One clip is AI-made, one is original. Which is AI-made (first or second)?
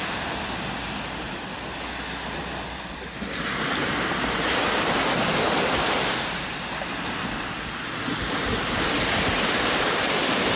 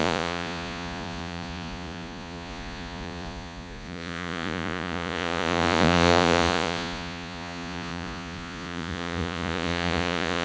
second